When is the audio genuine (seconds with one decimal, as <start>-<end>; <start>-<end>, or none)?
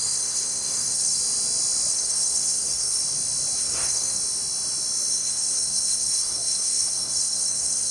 1.2-1.9; 3.0-3.6; 4.2-5.1